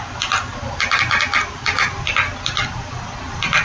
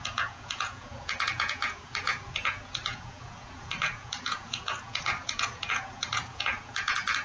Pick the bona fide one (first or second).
first